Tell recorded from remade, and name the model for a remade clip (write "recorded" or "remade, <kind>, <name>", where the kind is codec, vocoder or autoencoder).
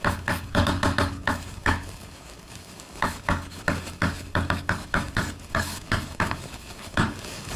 remade, codec, DAC